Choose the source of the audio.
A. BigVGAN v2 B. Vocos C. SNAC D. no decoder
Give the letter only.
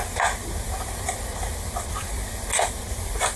D